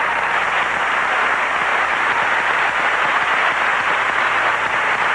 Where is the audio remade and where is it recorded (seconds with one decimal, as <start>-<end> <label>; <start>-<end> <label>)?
0.0-5.1 recorded

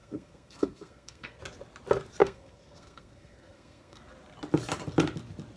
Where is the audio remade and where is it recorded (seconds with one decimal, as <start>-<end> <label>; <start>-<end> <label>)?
0.0-1.4 remade; 1.4-2.2 recorded; 2.2-4.0 remade; 4.0-5.6 recorded

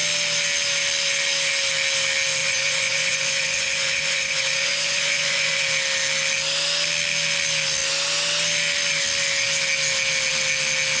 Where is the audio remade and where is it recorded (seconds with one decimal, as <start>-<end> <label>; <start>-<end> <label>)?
0.0-2.4 recorded; 2.4-5.6 remade; 5.6-11.0 recorded

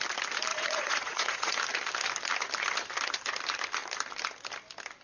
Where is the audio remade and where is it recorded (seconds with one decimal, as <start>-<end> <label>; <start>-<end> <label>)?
0.0-0.5 recorded; 0.5-1.6 remade; 1.6-5.0 recorded

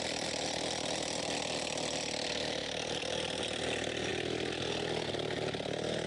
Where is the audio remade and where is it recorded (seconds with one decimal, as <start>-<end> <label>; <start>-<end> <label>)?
0.0-2.6 recorded; 2.6-3.1 remade; 3.1-6.1 recorded